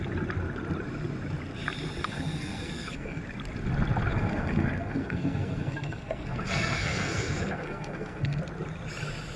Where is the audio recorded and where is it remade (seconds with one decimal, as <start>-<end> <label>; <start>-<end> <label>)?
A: 0.0-2.0 recorded; 2.0-3.2 remade; 3.2-4.1 recorded; 4.1-8.4 remade; 8.4-9.4 recorded